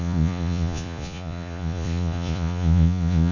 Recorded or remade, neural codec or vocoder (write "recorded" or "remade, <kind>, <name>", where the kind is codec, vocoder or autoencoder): remade, vocoder, Vocos